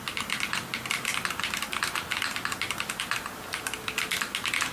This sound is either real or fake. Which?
real